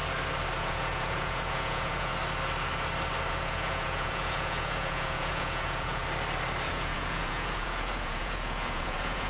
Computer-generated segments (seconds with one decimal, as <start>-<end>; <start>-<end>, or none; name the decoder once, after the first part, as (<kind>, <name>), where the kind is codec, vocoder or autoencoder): 0.6-2.1 (vocoder, Vocos); 3.3-6.0; 6.7-9.3